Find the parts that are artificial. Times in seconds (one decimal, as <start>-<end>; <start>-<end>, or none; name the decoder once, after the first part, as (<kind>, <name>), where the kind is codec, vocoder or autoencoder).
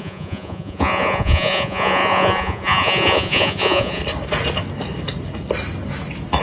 0.0-4.0 (vocoder, Vocos)